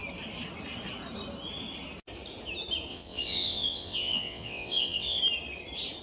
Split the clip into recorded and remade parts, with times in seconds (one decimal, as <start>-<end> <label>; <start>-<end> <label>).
0.0-2.9 recorded; 2.9-5.2 remade; 5.2-6.0 recorded